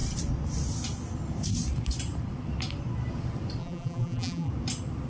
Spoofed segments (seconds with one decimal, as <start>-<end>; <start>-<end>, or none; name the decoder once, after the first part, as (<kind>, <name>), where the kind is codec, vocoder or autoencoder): 3.6-4.5 (vocoder, BigVGAN v2)